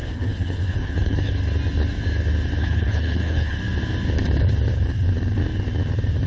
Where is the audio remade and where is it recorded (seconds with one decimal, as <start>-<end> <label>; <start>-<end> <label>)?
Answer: 0.0-1.3 remade; 1.3-2.6 recorded; 2.6-3.6 remade; 3.6-6.3 recorded